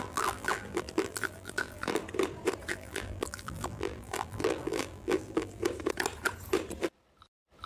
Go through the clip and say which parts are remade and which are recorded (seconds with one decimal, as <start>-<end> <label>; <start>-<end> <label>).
0.0-2.0 remade; 2.0-2.7 recorded; 2.7-5.6 remade; 5.6-7.7 recorded